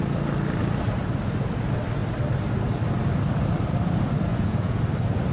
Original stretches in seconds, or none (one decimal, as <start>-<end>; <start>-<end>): 0.0-4.3; 4.8-5.3